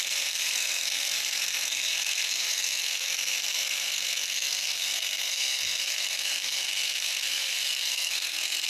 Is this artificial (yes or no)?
yes